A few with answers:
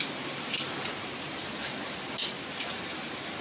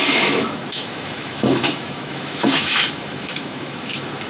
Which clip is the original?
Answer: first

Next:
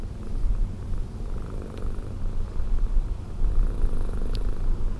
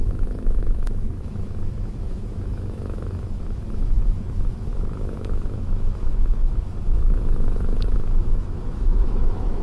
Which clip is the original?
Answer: first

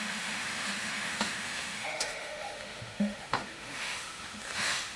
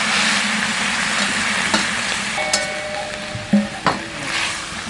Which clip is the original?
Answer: second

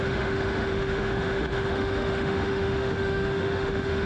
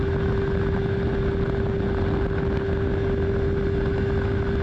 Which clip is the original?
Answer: second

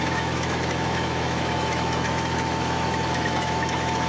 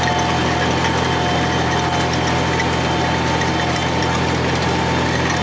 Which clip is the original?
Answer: second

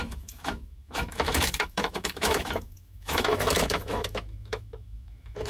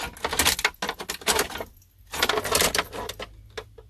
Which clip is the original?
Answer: second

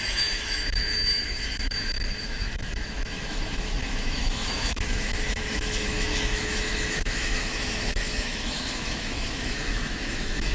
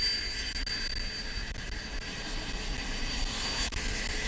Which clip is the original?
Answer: second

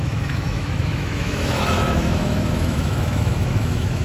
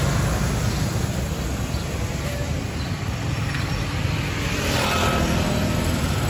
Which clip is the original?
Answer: second